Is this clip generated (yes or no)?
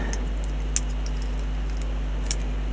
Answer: no